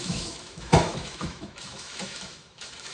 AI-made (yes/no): yes